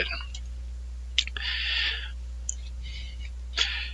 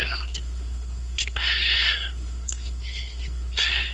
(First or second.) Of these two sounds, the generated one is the second